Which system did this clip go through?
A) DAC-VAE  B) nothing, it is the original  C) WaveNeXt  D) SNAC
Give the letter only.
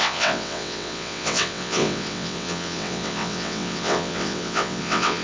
C